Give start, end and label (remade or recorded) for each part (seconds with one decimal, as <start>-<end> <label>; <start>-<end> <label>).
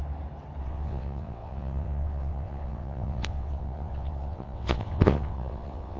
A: 0.0-0.6 recorded; 0.6-6.0 remade